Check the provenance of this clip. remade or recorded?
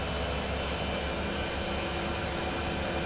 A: recorded